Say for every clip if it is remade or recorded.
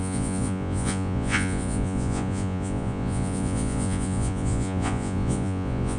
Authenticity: remade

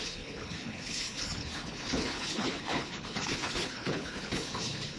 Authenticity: remade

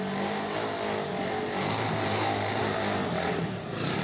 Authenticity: recorded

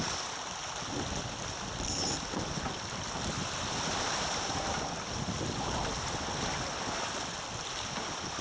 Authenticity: recorded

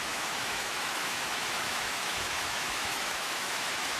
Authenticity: remade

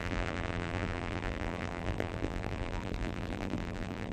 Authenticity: remade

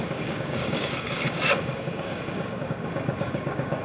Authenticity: remade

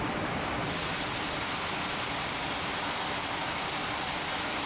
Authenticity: recorded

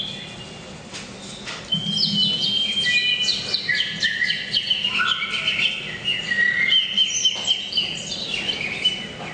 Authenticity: recorded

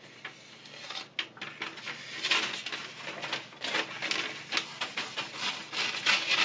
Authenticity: recorded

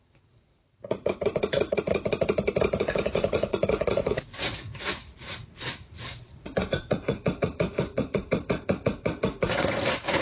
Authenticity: remade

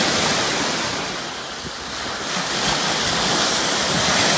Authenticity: recorded